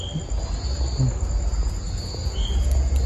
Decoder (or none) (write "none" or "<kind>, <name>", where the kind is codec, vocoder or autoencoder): none